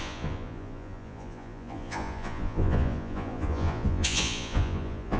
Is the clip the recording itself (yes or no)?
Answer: no